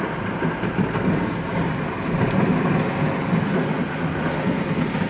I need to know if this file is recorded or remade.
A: recorded